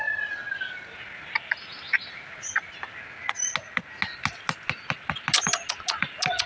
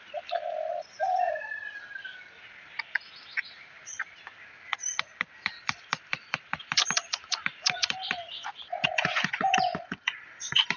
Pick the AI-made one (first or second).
second